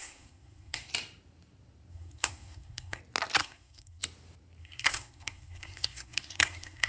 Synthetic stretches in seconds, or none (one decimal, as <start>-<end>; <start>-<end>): 0.0-0.9; 1.9-3.0; 3.4-4.0; 4.6-6.9